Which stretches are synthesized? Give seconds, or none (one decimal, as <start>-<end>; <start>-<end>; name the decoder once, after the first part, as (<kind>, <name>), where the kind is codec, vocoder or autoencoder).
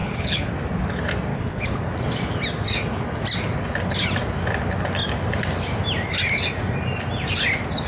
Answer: 0.0-0.5 (codec, HILCodec); 1.3-1.8